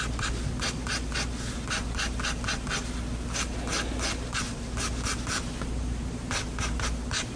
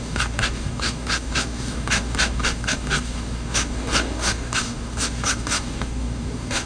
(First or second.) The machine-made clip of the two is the second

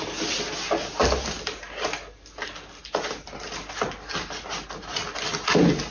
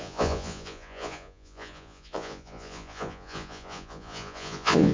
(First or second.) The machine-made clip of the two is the second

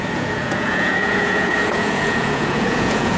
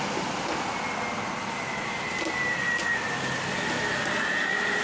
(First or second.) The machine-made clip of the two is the first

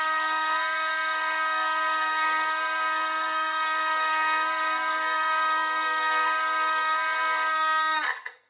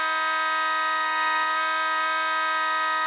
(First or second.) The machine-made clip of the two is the first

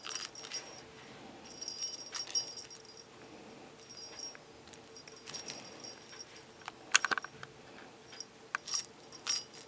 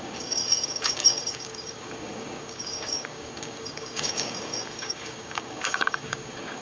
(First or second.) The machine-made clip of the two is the second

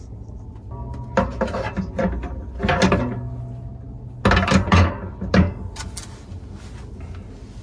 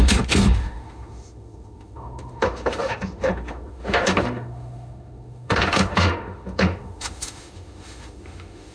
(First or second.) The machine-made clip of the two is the second